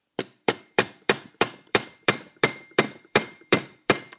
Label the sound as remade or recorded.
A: remade